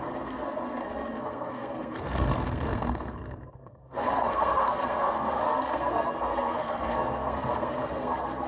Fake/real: fake